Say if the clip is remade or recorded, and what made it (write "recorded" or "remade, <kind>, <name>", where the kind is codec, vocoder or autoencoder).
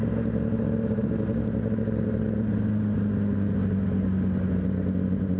recorded